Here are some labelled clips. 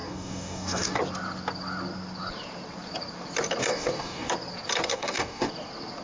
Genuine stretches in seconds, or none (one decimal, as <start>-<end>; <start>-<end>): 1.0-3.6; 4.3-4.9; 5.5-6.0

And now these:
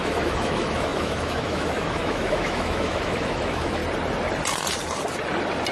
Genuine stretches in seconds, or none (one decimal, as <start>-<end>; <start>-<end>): 3.8-5.7

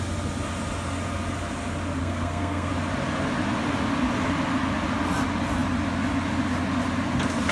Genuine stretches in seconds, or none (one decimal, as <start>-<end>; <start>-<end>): 0.0-2.0; 2.7-7.5

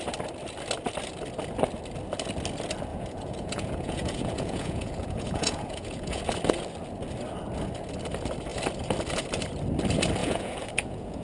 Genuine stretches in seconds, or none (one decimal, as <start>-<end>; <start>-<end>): 0.0-2.9; 6.2-10.2